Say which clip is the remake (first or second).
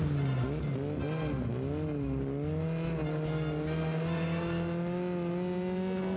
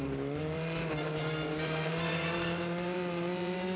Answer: second